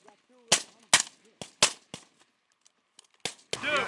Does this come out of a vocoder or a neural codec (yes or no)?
no